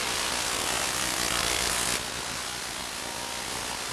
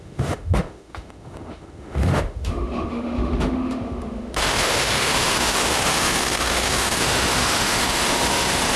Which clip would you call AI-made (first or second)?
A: second